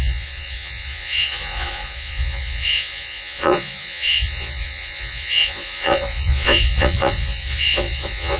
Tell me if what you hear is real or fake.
fake